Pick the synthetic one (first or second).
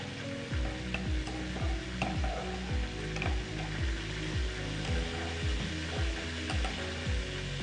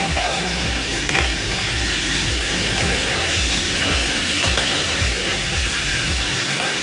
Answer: second